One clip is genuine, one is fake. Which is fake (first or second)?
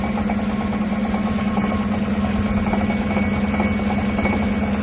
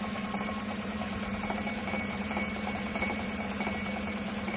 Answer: second